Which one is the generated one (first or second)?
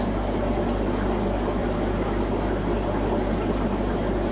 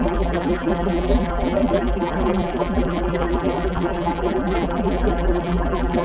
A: second